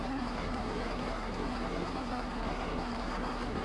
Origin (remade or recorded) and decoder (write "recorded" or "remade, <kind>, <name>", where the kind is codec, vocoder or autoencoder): remade, codec, SNAC